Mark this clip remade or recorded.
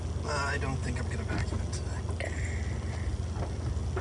recorded